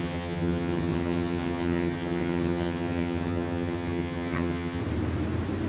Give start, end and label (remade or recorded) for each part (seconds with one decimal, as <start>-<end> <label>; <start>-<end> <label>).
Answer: 0.0-4.8 remade; 4.8-5.7 recorded

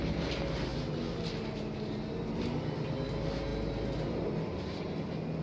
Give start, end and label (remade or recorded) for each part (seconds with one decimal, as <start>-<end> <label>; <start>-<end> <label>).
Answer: 0.0-5.4 recorded

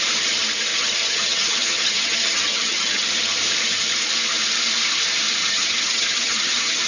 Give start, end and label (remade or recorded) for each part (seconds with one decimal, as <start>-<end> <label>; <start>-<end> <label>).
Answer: 0.0-0.7 recorded; 0.7-3.1 remade; 3.1-5.4 recorded; 5.4-6.9 remade

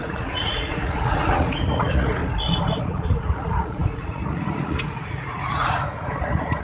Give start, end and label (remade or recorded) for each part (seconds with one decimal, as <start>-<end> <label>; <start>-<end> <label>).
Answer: 0.0-2.2 remade; 2.2-2.8 recorded; 2.8-6.6 remade

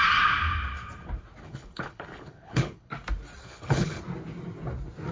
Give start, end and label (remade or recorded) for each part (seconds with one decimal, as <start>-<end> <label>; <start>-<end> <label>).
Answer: 0.0-1.4 recorded; 1.4-2.9 remade; 2.9-3.4 recorded; 3.4-4.0 remade; 4.0-5.1 recorded

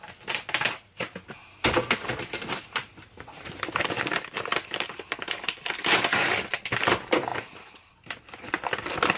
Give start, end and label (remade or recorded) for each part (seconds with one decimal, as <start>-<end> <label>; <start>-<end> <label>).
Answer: 0.0-1.4 recorded; 1.4-3.8 remade; 3.8-9.2 recorded

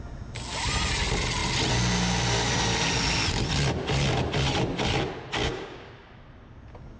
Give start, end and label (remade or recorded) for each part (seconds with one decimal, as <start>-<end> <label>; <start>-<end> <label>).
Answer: 0.0-5.4 recorded; 5.4-5.9 remade; 5.9-7.0 recorded